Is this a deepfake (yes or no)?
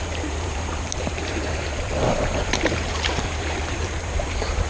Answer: yes